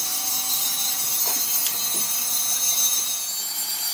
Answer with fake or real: real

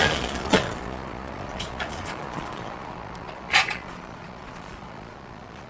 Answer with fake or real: fake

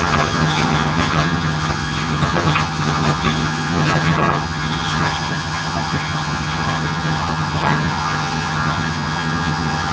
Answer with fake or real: fake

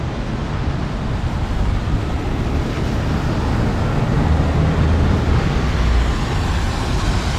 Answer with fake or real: real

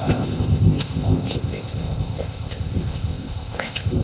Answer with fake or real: fake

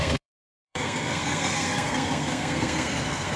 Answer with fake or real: fake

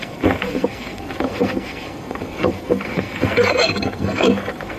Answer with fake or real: fake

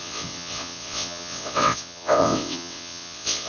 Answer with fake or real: fake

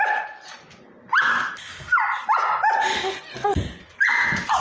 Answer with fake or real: real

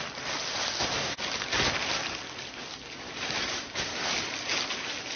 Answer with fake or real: real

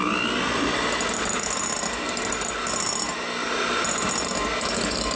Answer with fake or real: real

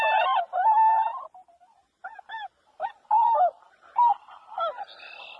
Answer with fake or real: real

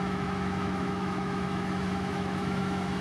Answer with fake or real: fake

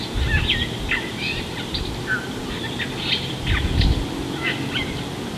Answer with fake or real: real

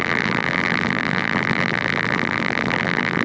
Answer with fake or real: fake